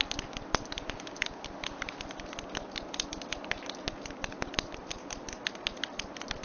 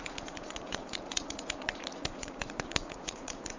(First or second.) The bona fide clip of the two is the first